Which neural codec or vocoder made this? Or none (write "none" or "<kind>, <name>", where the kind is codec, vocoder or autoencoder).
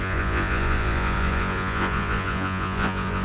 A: vocoder, Vocos